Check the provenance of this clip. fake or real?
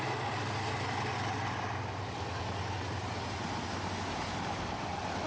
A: real